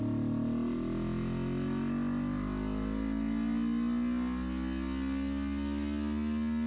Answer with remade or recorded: recorded